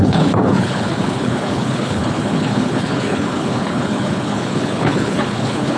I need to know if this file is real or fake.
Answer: fake